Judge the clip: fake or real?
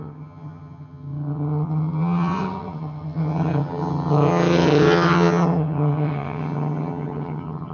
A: fake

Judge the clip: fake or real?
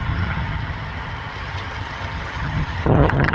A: fake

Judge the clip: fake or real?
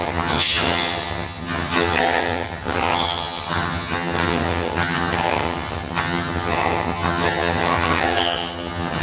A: fake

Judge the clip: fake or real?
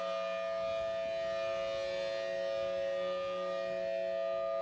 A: real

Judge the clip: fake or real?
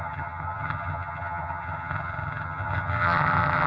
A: fake